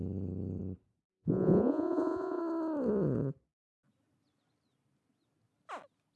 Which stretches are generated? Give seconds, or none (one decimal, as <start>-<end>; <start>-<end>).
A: 1.1-2.4